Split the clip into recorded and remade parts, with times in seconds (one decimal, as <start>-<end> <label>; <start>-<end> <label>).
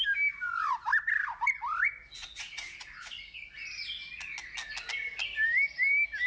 0.0-2.2 recorded; 2.2-3.5 remade; 3.5-6.3 recorded